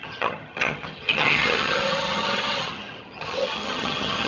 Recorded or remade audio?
remade